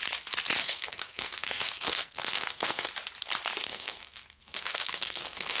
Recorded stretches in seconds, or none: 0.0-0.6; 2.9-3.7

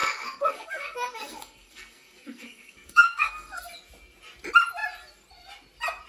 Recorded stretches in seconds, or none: 3.7-6.1

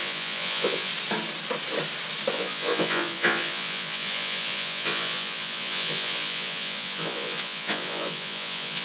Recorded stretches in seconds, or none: 0.9-2.3

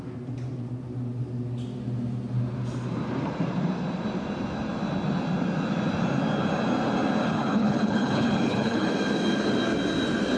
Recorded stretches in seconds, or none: 0.0-7.2; 8.9-10.4

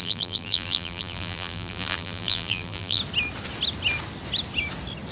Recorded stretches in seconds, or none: 3.0-5.1

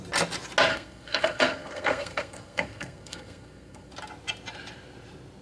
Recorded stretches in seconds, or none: 0.0-0.7; 3.9-5.4

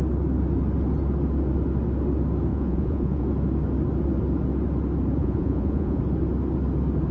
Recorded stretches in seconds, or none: 0.0-2.5; 3.2-5.2; 6.0-7.1

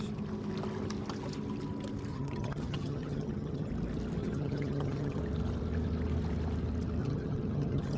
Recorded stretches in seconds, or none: 0.0-2.1; 3.7-4.2; 5.2-7.0